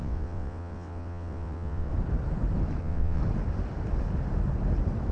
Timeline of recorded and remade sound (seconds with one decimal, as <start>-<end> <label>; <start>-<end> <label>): 0.0-1.9 remade; 1.9-2.8 recorded; 2.8-3.2 remade; 3.2-5.1 recorded

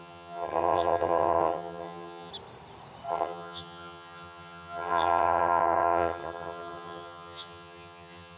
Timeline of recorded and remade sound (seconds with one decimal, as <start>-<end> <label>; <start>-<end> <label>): 0.0-2.3 remade; 2.3-3.1 recorded; 3.1-8.4 remade

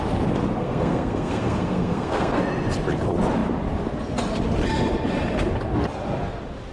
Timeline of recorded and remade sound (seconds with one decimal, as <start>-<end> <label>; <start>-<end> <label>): 0.0-0.6 recorded; 0.6-2.4 remade; 2.4-6.7 recorded